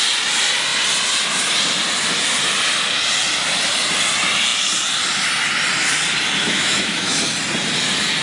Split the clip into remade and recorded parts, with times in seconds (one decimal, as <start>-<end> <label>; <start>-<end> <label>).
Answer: 0.0-6.4 recorded; 6.4-7.2 remade; 7.2-8.2 recorded

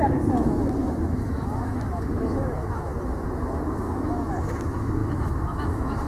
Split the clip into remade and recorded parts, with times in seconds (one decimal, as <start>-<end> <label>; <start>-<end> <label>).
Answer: 0.0-2.9 remade; 2.9-3.5 recorded; 3.5-6.1 remade

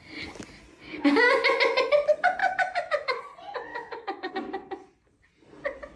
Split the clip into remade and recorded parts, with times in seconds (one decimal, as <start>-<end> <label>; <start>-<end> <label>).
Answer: 0.0-2.4 recorded; 2.4-3.2 remade; 3.2-3.7 recorded; 3.7-4.3 remade; 4.3-6.0 recorded

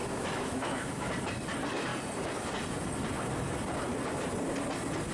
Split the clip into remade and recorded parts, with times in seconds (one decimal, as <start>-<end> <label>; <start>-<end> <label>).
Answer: 0.0-1.1 remade; 1.1-5.1 recorded

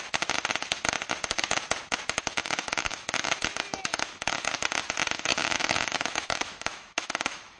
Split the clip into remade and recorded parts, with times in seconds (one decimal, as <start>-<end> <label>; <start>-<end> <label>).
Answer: 0.0-2.4 recorded; 2.4-3.3 remade; 3.3-3.9 recorded; 3.9-4.5 remade; 4.5-5.3 recorded; 5.3-7.6 remade

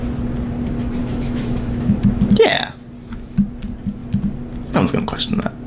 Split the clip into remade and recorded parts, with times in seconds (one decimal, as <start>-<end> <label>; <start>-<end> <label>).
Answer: 0.0-1.0 recorded; 1.0-1.9 remade; 1.9-5.7 recorded

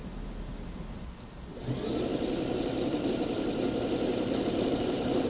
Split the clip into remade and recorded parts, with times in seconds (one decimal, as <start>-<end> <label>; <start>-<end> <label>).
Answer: 0.0-5.3 recorded

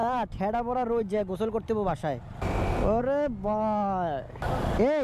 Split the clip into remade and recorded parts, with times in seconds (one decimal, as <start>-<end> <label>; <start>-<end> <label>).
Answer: 0.0-5.0 recorded